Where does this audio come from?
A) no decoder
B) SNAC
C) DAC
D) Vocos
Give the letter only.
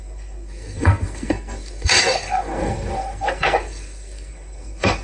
B